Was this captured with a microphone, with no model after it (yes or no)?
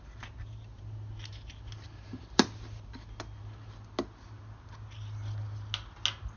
yes